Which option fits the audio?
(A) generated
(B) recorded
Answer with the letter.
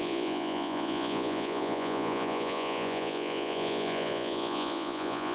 A